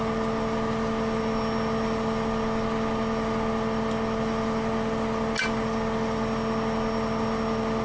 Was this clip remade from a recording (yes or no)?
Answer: no